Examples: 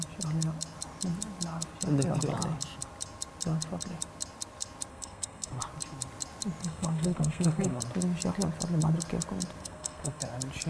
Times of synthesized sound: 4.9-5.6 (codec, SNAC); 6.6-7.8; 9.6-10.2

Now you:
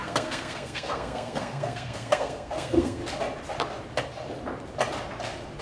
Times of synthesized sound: 0.0-3.0 (codec, SNAC)

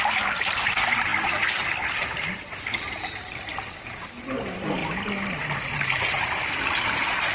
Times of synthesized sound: none

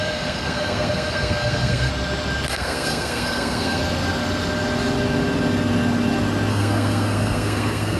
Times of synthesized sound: 0.0-1.9 (codec, SNAC); 2.5-3.8; 6.5-8.0

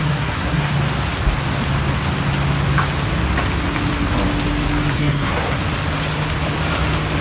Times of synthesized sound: 0.0-0.7 (codec, SNAC); 4.9-5.6

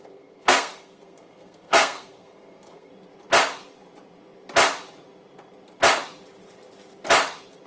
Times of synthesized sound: 0.0-2.9 (codec, SNAC)